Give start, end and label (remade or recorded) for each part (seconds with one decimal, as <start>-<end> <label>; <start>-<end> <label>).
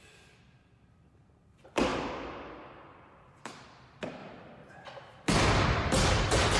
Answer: 0.0-1.9 remade; 1.9-3.0 recorded; 3.0-4.2 remade; 4.2-5.3 recorded; 5.3-6.6 remade